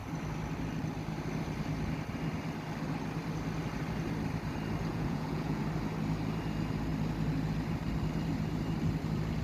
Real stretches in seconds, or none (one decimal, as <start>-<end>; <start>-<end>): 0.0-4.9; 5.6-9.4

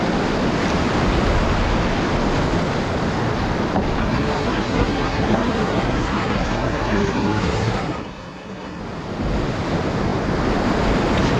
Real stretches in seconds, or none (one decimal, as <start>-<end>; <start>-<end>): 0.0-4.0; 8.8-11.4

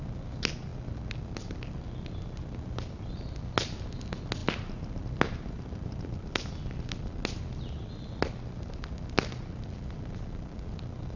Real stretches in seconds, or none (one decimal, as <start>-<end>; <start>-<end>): 0.0-11.2